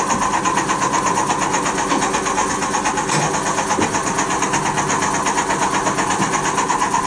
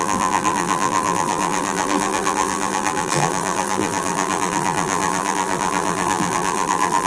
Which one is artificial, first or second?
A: second